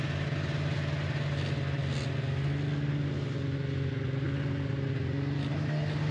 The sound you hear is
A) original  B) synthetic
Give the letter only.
A